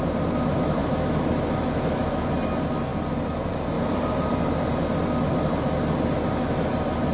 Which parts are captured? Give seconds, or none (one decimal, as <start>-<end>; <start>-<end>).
0.0-0.8; 2.3-7.1